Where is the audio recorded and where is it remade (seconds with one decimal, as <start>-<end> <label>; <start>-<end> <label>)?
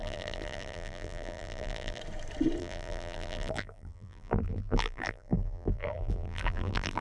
0.0-2.0 remade; 2.0-2.6 recorded; 2.6-7.0 remade